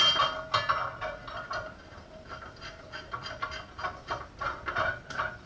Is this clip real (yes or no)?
yes